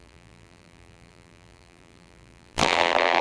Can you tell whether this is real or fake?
fake